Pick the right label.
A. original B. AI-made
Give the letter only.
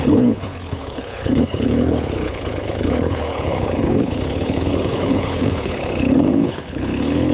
B